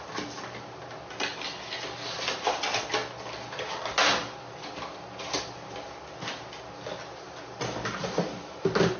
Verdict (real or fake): real